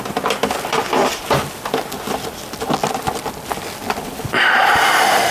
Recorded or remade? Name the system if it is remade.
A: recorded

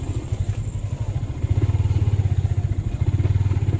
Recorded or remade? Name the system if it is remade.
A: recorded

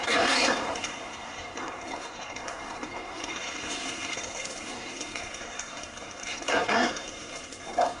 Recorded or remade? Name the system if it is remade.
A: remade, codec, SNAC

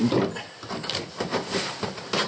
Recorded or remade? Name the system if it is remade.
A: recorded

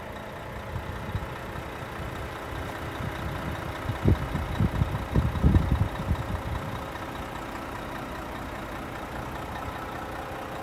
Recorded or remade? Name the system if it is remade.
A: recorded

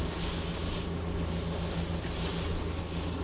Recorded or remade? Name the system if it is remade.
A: recorded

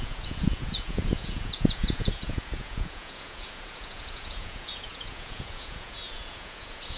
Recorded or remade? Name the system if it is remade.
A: remade, vocoder, Vocos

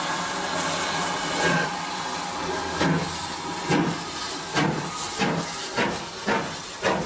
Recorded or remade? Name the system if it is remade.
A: recorded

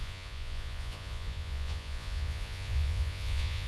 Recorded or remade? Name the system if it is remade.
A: remade, vocoder, Vocos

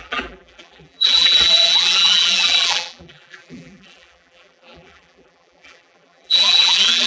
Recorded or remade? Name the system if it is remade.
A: remade, vocoder, BigVGAN v2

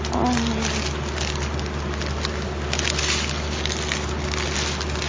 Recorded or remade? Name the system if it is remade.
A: recorded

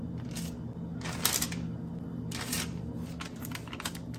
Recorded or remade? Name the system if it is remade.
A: recorded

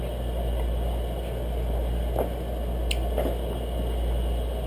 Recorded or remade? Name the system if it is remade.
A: recorded